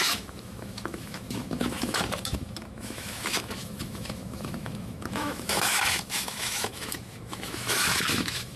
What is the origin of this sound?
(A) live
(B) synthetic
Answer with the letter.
B